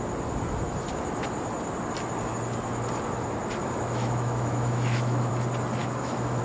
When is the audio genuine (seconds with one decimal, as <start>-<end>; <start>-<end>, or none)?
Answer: 0.0-3.6; 5.3-5.8